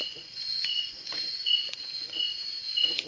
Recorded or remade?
remade